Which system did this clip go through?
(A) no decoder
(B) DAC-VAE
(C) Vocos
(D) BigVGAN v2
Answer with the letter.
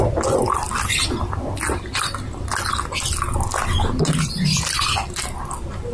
A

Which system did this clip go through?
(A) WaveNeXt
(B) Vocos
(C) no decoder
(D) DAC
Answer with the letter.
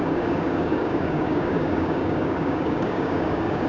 D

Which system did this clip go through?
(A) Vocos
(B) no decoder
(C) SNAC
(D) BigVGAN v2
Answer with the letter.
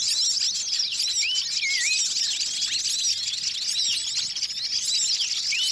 B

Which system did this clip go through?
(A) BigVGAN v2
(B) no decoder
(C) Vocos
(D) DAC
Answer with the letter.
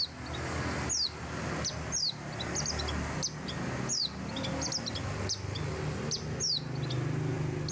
B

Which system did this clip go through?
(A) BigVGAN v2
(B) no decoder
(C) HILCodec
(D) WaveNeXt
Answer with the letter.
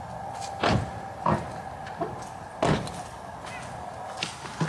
B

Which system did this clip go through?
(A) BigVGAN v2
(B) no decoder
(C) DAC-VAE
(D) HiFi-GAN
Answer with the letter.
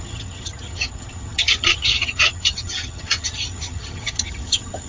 D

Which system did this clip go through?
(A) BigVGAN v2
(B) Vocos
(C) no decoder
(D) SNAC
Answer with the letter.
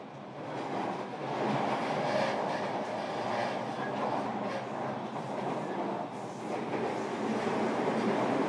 C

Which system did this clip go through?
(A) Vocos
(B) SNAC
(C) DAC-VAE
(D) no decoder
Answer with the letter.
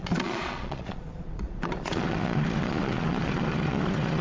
A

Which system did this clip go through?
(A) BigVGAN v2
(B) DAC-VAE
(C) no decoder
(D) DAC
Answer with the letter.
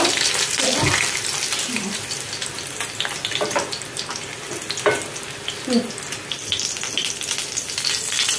C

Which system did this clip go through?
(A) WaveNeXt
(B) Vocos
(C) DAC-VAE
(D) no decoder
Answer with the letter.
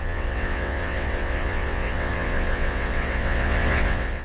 A